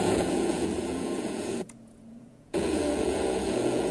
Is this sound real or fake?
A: fake